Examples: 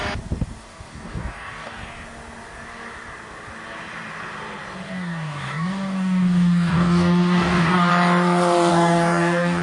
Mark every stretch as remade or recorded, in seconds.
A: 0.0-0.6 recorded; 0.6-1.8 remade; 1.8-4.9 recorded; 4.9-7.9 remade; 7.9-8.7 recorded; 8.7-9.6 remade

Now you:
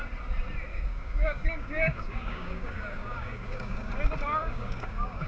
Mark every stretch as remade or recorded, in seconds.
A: 0.0-0.7 recorded; 0.7-3.9 remade; 3.9-4.4 recorded; 4.4-5.3 remade